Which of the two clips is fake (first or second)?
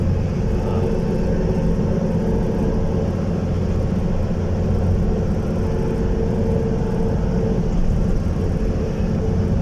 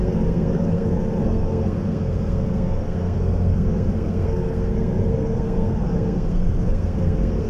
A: second